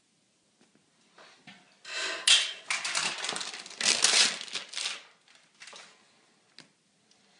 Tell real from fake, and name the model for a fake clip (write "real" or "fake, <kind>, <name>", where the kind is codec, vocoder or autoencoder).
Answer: real